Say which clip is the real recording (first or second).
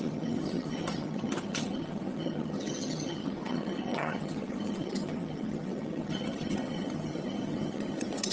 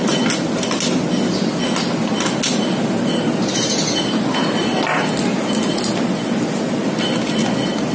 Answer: second